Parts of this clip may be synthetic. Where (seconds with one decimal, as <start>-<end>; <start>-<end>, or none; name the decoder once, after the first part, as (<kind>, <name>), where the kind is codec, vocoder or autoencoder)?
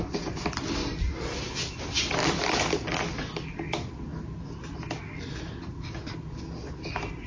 none